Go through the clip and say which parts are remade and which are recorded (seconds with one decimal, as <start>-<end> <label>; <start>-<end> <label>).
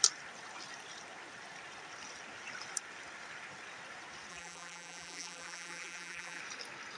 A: 0.0-4.3 recorded; 4.3-6.4 remade; 6.4-7.0 recorded